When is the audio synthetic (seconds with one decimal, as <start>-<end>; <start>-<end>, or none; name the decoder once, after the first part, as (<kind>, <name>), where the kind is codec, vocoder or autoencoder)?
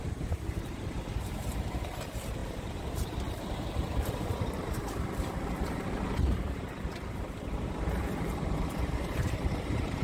0.0-10.0 (vocoder, BigVGAN v2)